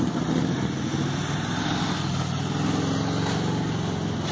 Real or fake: real